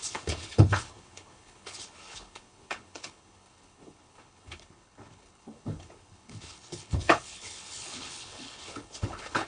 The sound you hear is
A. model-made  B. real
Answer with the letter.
A